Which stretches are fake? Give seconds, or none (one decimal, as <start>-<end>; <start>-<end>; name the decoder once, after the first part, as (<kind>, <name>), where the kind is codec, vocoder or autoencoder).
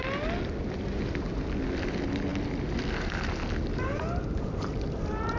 none